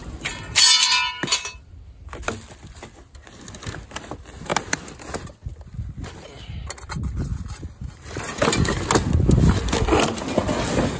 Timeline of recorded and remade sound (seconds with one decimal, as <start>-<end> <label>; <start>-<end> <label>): 0.0-11.0 recorded